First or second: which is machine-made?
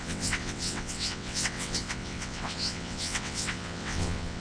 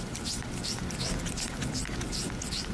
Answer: first